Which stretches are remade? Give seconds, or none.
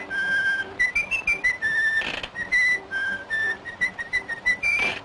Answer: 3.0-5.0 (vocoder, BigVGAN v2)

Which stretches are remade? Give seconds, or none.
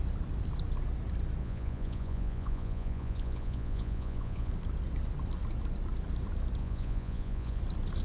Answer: 1.4-4.5 (vocoder, Vocos); 6.6-7.6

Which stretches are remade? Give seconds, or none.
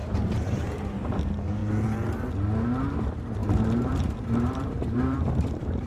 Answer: 0.0-1.6 (vocoder, BigVGAN v2); 2.8-5.9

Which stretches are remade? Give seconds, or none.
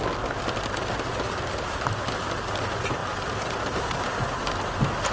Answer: none